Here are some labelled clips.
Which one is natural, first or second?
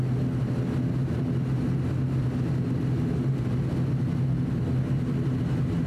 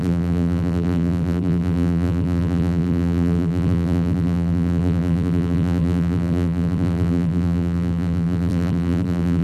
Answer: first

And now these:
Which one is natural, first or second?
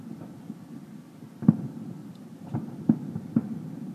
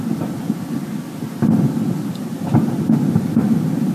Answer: second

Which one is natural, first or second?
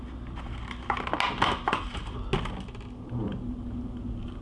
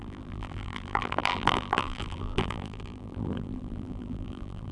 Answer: first